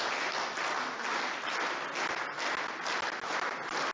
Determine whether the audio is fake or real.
real